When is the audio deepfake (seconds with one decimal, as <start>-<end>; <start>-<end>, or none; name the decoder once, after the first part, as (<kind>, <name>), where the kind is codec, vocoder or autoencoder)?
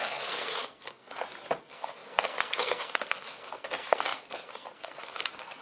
0.0-1.1 (codec, SNAC); 1.6-5.6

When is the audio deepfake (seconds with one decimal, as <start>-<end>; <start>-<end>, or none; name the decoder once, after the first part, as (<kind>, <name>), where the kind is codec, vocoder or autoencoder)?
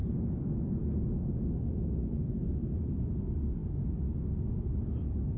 0.0-3.2 (vocoder, BigVGAN v2); 3.6-5.4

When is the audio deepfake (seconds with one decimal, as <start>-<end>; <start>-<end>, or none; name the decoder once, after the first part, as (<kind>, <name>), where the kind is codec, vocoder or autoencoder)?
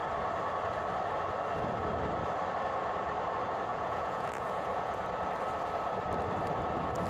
3.7-5.0 (vocoder, Vocos)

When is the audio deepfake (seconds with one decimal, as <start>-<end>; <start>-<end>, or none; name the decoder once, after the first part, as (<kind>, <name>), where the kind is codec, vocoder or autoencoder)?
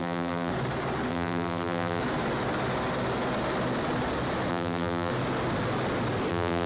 0.0-0.5 (vocoder, BigVGAN v2); 1.1-2.0; 4.5-5.1; 6.3-6.7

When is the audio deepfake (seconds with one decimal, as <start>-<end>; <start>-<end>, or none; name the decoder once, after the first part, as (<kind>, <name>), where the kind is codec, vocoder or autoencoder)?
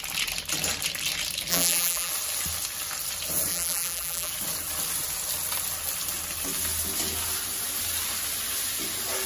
1.5-2.1 (vocoder, BigVGAN v2); 3.5-4.3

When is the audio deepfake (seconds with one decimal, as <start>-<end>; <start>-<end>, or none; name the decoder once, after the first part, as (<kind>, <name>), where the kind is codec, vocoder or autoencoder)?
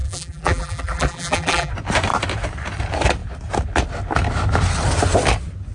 0.0-1.7 (vocoder, BigVGAN v2)